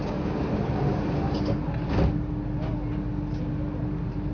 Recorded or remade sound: recorded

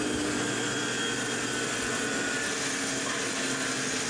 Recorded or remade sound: recorded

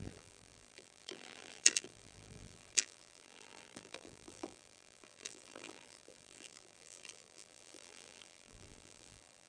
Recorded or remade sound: remade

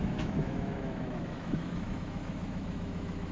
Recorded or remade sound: remade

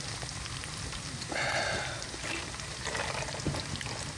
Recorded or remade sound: recorded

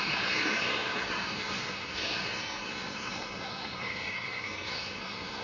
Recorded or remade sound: remade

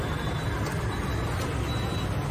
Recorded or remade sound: recorded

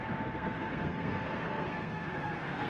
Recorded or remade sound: remade